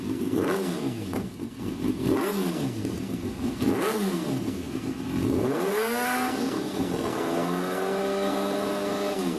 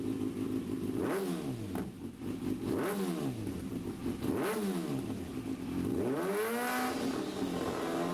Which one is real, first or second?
second